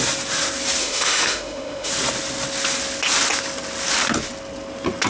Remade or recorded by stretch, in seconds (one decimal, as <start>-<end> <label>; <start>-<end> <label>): 0.0-0.8 recorded; 0.8-1.9 remade; 1.9-5.1 recorded